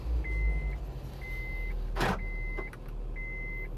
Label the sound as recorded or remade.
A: recorded